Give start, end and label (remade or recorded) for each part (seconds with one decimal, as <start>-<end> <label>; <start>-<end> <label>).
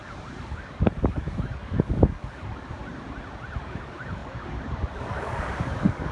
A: 0.0-2.8 remade; 2.8-3.6 recorded; 3.6-6.1 remade